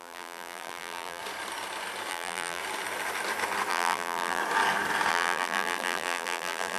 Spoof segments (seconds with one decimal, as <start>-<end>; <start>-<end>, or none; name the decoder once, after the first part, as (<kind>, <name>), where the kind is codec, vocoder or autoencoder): 0.0-1.2 (vocoder, BigVGAN v2); 2.1-2.6; 3.7-4.4; 5.1-6.8